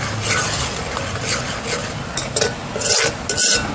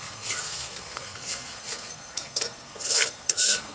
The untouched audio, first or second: first